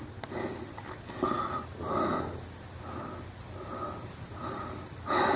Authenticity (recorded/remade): recorded